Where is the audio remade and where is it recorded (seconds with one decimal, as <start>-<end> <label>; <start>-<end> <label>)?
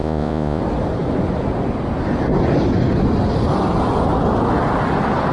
0.0-0.6 remade; 0.6-5.3 recorded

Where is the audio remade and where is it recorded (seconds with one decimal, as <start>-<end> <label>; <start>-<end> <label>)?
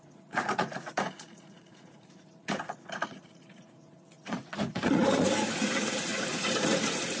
0.0-7.2 remade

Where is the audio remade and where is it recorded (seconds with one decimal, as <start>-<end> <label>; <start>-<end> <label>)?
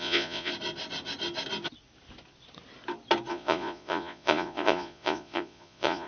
0.0-0.5 remade; 0.5-3.3 recorded; 3.3-6.1 remade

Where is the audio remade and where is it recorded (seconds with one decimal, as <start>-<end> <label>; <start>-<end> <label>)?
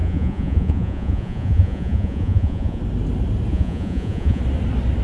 0.0-2.8 remade; 2.8-3.5 recorded; 3.5-4.4 remade; 4.4-5.0 recorded